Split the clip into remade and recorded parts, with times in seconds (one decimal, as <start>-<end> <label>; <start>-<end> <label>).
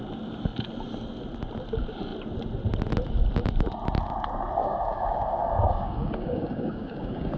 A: 0.0-4.6 recorded; 4.6-7.4 remade